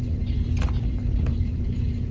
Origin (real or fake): fake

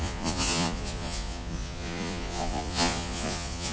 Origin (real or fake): fake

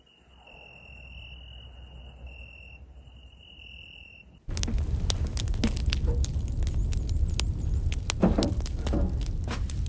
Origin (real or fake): real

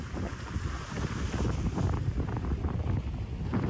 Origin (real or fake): real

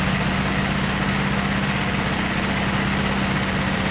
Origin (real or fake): real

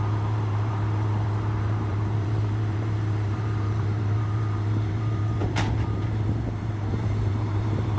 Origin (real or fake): fake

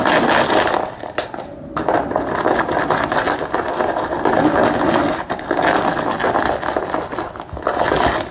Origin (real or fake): real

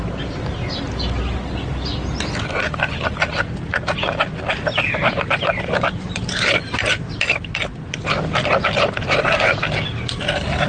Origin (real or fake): real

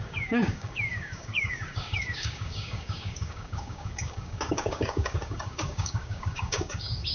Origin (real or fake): fake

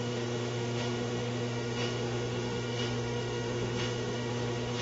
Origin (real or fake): fake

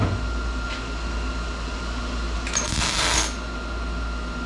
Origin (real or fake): real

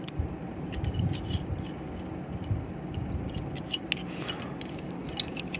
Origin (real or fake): real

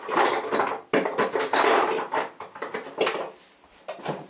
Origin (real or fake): real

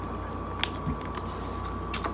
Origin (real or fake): real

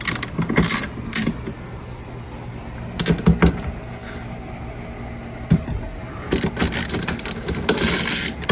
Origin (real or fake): real